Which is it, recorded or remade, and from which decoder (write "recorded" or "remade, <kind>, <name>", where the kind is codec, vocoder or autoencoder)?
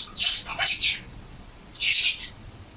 remade, vocoder, Vocos